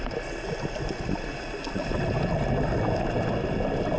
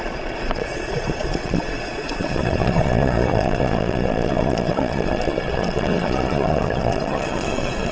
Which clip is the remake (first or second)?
second